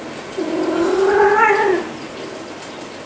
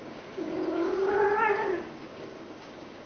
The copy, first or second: second